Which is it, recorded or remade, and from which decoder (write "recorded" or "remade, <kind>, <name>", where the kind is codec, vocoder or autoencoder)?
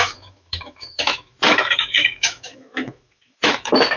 remade, autoencoder, DAC-VAE